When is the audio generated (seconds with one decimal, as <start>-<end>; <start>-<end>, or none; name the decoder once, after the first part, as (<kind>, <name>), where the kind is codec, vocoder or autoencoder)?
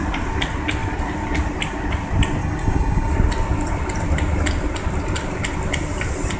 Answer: 2.4-3.1 (codec, DAC)